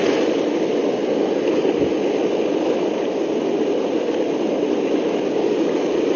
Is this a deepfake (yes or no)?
no